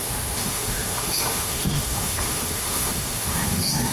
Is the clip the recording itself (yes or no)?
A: no